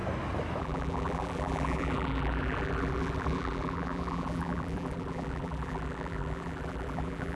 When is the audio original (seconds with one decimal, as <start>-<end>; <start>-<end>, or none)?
0.0-0.6